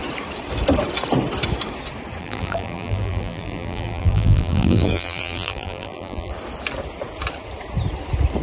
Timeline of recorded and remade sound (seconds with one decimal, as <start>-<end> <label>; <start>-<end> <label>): 0.0-2.2 recorded; 2.2-6.3 remade; 6.3-8.4 recorded